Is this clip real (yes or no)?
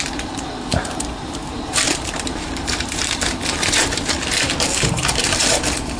no